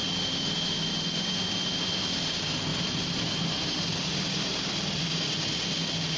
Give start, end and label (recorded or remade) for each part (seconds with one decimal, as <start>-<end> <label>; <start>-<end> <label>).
0.0-2.7 recorded; 2.7-4.7 remade; 4.7-6.2 recorded